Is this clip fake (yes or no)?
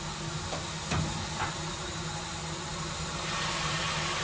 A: no